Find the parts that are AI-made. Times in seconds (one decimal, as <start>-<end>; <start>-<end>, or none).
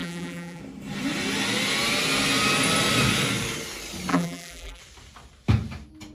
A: 0.0-0.6; 4.1-4.8